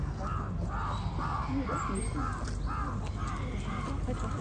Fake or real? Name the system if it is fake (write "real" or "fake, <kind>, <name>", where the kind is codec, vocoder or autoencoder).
real